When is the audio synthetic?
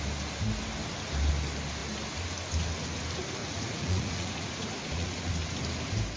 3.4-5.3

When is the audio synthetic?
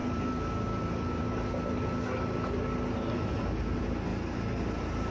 4.1-5.1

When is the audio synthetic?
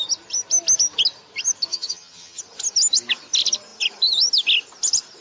1.7-2.4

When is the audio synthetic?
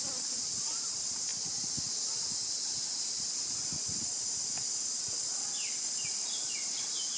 none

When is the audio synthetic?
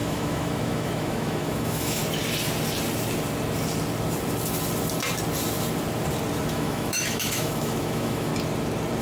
0.0-2.0; 6.5-8.3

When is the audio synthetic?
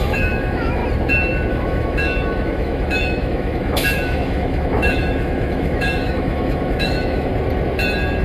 0.0-0.8; 1.5-7.3